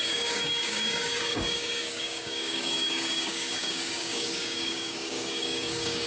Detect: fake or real fake